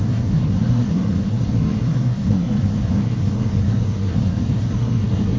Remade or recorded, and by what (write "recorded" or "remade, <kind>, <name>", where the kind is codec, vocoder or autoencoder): remade, codec, SNAC